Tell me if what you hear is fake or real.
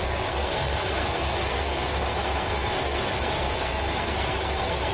fake